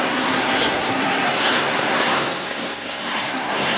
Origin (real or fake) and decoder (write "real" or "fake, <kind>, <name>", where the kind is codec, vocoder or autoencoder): fake, codec, SNAC